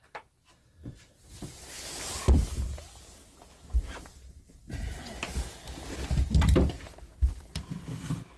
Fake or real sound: real